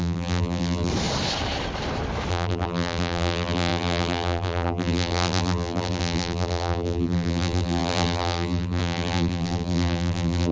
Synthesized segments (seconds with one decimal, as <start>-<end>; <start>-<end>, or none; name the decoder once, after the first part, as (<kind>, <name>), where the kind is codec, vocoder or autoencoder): 0.0-0.9 (vocoder, BigVGAN v2); 2.3-10.5